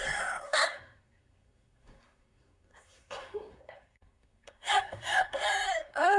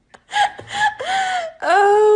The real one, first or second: second